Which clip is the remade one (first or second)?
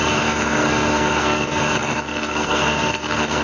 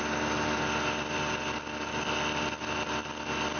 first